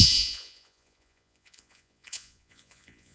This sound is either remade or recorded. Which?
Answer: remade